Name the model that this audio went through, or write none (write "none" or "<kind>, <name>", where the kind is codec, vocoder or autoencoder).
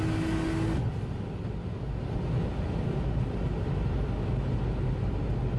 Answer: none